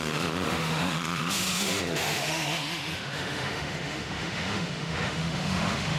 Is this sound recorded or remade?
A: remade